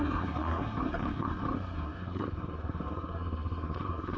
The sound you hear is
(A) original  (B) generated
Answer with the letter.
B